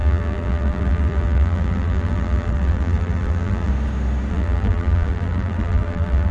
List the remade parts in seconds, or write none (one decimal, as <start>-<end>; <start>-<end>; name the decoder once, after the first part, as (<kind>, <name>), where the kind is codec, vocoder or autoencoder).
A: 0.0-3.7 (vocoder, BigVGAN v2); 4.3-6.3